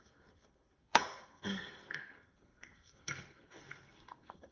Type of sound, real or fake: fake